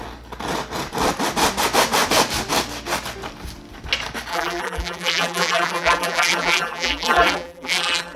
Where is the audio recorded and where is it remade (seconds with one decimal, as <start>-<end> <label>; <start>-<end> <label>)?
0.0-4.3 recorded; 4.3-8.2 remade